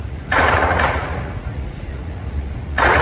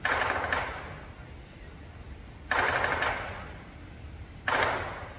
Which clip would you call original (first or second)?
second